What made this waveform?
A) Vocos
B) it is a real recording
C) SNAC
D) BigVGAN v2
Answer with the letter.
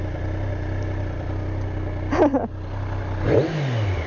B